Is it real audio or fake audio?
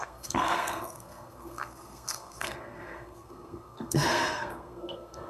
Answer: fake